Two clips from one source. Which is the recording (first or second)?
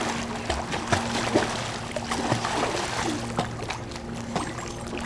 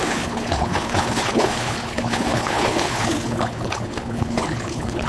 first